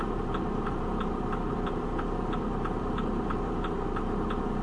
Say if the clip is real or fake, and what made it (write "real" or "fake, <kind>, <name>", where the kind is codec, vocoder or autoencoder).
fake, vocoder, BigVGAN v2